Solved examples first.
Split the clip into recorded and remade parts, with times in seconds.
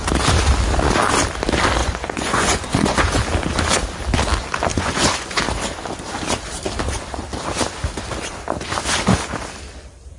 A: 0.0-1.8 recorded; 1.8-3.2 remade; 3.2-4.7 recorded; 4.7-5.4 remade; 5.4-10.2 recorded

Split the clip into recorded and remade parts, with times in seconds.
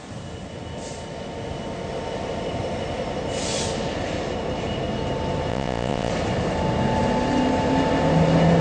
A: 0.0-5.5 recorded; 5.5-6.1 remade; 6.1-8.6 recorded